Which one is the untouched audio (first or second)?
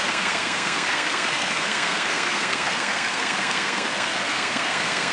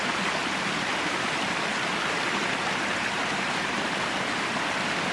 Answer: second